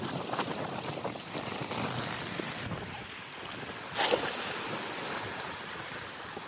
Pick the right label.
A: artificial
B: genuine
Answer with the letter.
B